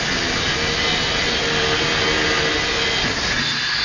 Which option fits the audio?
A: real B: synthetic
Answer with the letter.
A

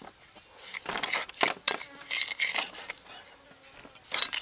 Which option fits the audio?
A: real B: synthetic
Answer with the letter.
A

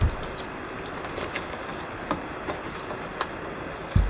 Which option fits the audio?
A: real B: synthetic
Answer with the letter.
A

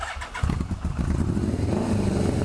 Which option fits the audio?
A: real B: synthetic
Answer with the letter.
A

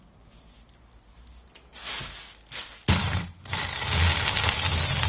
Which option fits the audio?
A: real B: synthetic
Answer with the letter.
A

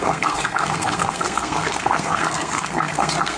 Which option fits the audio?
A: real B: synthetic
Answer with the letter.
B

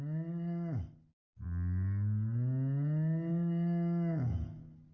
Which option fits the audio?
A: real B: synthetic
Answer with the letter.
A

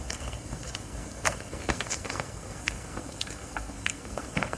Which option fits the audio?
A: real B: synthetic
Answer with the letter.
B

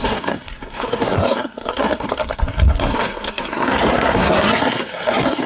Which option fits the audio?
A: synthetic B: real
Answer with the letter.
A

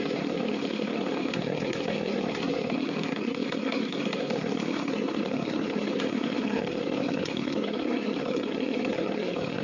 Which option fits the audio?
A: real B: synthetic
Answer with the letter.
B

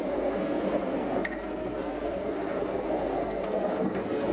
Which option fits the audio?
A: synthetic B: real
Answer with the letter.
A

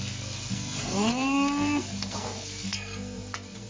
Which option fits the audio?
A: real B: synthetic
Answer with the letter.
B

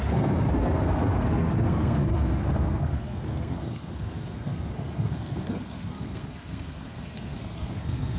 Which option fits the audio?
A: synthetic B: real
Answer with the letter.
A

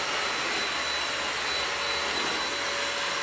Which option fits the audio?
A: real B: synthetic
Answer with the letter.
A